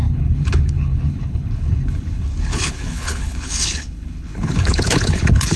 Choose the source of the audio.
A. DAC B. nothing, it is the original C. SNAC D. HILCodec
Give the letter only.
D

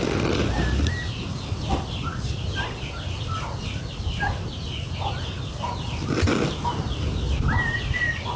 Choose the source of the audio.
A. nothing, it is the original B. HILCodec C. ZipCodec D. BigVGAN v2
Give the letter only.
A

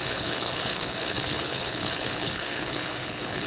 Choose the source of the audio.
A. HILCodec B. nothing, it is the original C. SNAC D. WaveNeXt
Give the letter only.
A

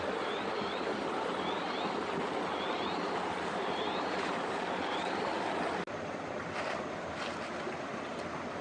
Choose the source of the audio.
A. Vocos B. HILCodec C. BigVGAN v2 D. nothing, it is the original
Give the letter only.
D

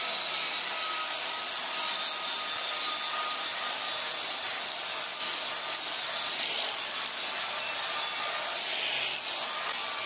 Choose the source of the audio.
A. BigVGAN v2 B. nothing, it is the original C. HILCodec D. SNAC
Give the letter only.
B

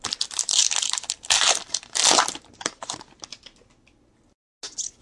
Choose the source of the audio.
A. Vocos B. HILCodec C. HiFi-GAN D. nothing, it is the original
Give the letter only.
D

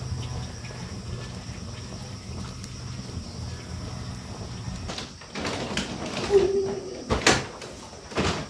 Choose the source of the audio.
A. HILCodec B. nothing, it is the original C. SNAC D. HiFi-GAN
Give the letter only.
B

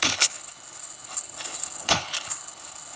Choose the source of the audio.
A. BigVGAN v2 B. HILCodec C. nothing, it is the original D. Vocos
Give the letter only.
B